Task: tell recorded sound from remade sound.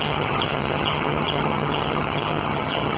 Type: remade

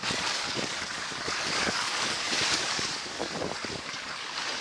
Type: remade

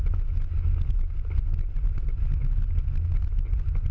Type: recorded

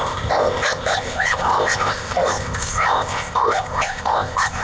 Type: remade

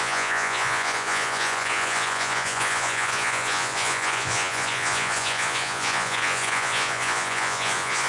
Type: remade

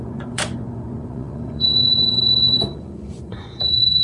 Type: remade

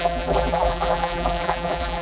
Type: remade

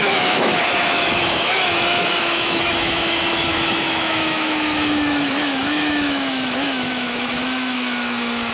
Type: remade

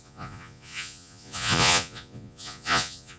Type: remade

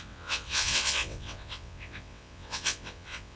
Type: remade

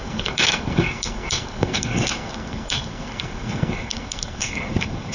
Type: remade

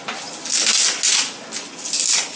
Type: recorded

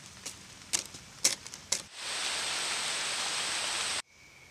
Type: recorded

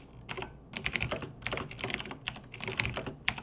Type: recorded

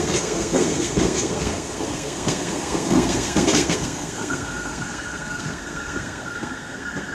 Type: remade